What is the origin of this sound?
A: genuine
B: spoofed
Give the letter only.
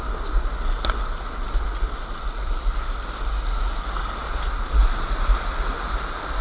A